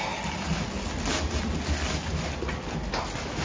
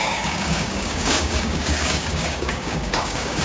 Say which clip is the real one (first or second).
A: first